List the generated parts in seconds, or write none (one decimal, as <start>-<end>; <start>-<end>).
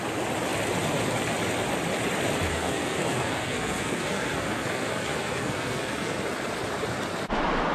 2.5-6.2